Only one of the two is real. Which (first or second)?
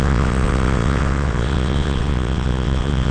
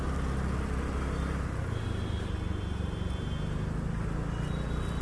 second